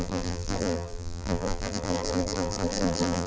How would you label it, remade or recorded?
remade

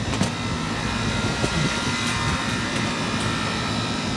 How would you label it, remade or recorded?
recorded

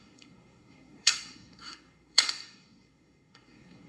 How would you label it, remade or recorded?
remade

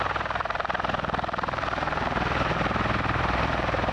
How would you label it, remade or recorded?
remade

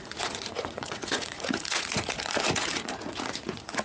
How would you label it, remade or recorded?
remade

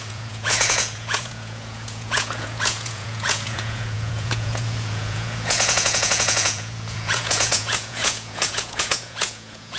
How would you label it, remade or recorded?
remade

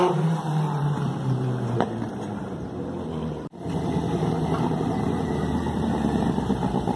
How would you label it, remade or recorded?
remade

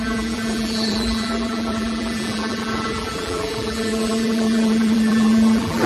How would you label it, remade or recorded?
remade